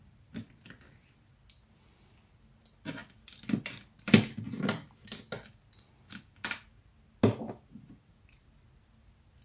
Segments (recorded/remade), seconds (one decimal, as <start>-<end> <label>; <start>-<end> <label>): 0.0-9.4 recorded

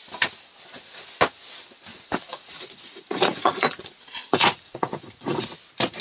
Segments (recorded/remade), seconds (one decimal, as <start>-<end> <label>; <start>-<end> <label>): 0.0-1.9 recorded; 1.9-5.5 remade; 5.5-6.0 recorded

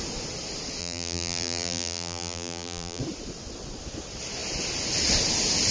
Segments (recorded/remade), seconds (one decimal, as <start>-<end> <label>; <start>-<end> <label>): 0.0-0.8 recorded; 0.8-3.0 remade; 3.0-5.7 recorded

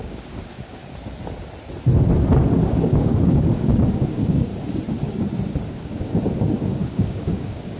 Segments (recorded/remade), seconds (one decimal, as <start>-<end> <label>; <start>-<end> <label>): 0.0-0.8 remade; 0.8-2.7 recorded; 2.7-4.5 remade; 4.5-5.7 recorded; 5.7-7.8 remade

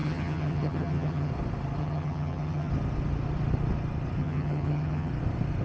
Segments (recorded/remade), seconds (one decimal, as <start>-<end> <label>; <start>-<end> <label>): 0.0-1.3 remade; 1.3-1.8 recorded; 1.8-2.7 remade; 2.7-4.2 recorded; 4.2-5.1 remade; 5.1-5.6 recorded

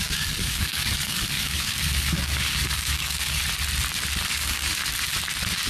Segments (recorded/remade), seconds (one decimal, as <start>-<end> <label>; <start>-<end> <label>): 0.0-3.4 remade; 3.4-4.3 recorded; 4.3-4.8 remade; 4.8-5.7 recorded

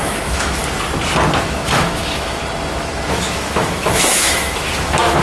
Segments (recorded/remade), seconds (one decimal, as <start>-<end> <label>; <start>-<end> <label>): 0.0-0.6 remade; 0.6-1.4 recorded; 1.4-2.4 remade; 2.4-3.1 recorded; 3.1-5.2 remade

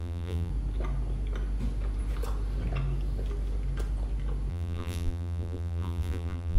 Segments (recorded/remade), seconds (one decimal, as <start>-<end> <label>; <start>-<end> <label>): 0.0-0.5 remade; 0.5-4.5 recorded; 4.5-6.6 remade